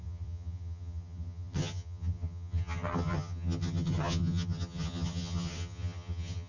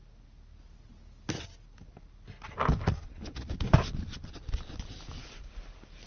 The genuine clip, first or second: second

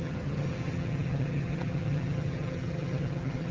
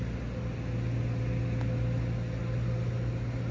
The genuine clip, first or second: second